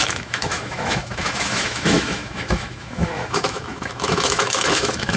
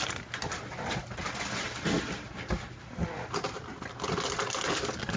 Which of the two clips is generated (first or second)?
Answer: first